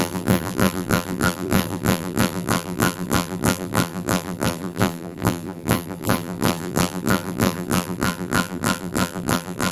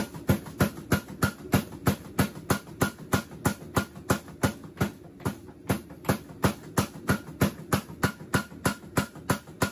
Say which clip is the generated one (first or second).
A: first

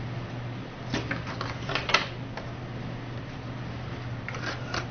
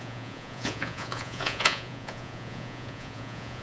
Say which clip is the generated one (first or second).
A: second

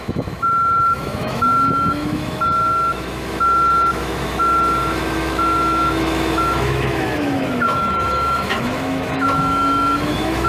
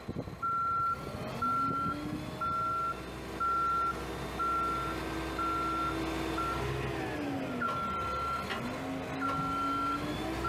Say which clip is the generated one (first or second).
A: first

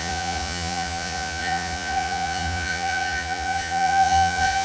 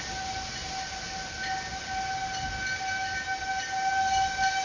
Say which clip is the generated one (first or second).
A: first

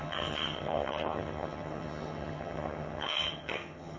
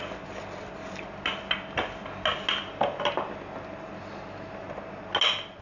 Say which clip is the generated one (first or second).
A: first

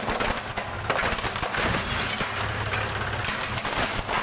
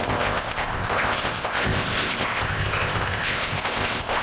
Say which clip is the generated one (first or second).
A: second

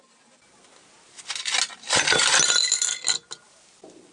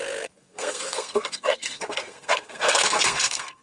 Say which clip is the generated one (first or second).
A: second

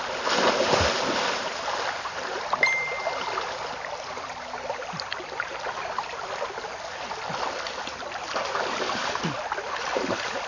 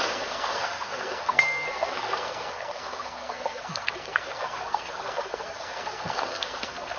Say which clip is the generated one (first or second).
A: second